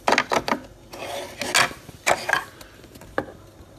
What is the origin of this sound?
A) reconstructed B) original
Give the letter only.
B